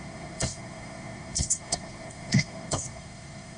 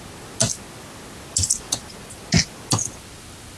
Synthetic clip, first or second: first